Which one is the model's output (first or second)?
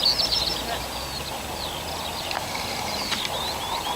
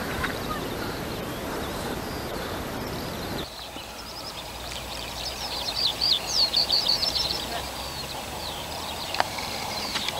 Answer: second